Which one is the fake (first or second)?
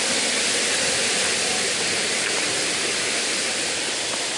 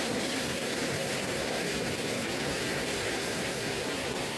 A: second